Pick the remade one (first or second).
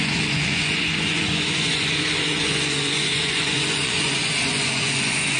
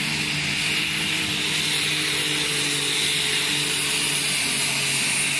first